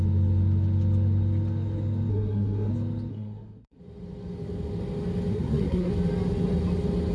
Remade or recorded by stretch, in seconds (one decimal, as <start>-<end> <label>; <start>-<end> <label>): 0.0-2.1 recorded; 2.1-2.7 remade; 2.7-3.1 recorded; 3.1-3.8 remade; 3.8-5.3 recorded; 5.3-5.9 remade; 5.9-7.1 recorded